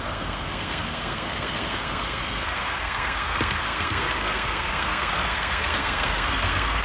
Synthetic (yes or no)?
yes